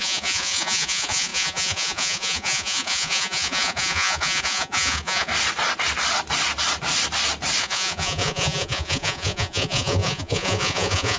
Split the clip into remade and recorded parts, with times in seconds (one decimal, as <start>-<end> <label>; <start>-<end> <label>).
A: 0.0-5.3 remade; 5.3-7.6 recorded; 7.6-11.2 remade